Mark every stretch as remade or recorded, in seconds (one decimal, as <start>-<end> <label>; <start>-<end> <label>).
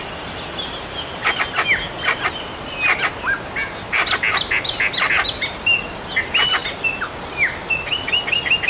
0.0-8.7 recorded